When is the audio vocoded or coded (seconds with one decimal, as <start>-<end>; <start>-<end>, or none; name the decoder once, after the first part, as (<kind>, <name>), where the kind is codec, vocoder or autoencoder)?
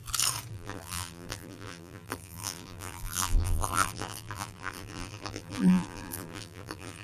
0.5-7.0 (vocoder, BigVGAN v2)